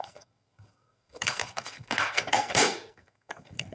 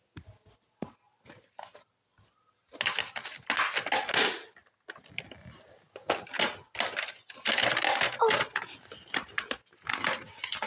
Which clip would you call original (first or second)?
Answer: second